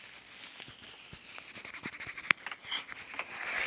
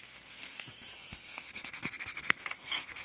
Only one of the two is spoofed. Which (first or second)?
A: second